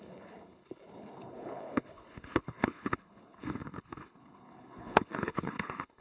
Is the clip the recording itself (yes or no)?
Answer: no